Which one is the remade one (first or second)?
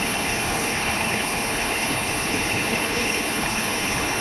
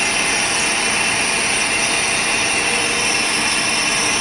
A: first